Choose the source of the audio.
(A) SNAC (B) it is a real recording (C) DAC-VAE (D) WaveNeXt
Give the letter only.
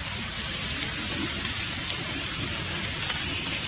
B